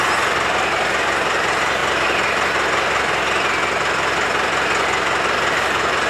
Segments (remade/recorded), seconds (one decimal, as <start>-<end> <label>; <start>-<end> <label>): 0.0-1.8 remade; 1.8-5.5 recorded; 5.5-6.1 remade